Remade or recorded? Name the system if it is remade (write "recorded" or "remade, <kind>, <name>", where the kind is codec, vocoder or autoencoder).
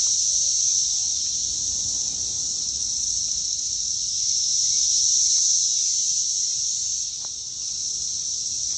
recorded